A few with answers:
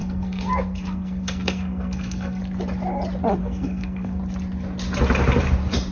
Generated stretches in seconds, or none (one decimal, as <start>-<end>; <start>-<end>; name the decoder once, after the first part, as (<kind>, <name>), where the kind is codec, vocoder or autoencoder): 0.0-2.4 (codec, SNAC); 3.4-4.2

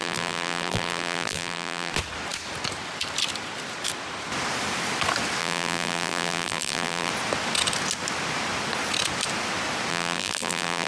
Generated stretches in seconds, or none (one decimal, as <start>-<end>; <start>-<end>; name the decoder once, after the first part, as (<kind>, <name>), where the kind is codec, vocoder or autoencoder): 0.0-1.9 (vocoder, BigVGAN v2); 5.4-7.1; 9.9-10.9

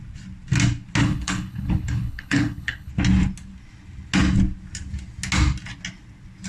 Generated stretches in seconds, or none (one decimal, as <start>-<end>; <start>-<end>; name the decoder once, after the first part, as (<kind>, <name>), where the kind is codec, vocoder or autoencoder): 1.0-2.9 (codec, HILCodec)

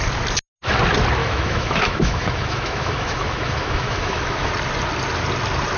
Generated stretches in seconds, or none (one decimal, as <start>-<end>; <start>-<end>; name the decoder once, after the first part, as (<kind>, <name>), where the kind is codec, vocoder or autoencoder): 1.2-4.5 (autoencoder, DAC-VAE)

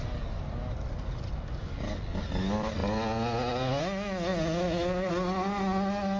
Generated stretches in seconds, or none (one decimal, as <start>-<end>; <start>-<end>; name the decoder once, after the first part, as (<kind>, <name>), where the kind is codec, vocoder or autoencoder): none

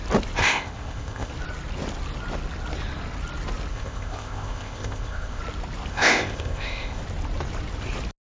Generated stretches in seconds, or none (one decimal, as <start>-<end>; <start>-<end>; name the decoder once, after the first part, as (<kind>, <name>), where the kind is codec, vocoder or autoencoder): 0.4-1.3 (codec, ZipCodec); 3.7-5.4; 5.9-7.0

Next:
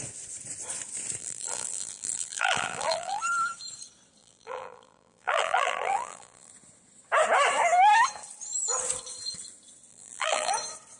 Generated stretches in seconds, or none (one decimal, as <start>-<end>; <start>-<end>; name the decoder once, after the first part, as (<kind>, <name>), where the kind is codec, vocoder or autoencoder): 1.2-3.2 (vocoder, BigVGAN v2); 4.2-6.5; 9.9-10.5